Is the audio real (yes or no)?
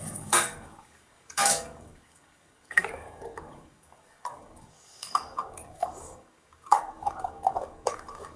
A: no